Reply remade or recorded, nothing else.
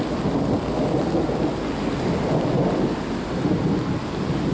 recorded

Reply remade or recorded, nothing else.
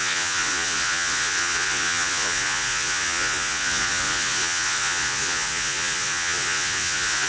remade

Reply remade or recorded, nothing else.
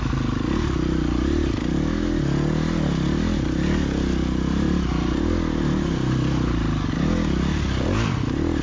recorded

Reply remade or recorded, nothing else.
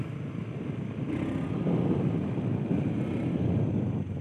recorded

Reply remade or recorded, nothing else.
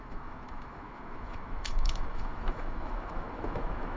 remade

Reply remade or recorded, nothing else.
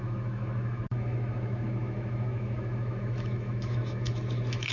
remade